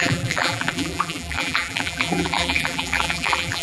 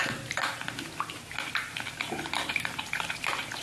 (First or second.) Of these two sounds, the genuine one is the second